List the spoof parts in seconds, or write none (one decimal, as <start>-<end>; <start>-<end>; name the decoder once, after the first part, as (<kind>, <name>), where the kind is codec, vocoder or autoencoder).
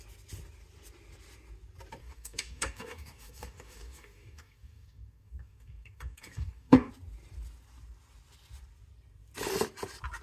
2.0-6.9 (codec, DAC)